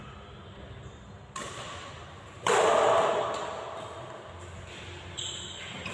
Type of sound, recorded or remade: recorded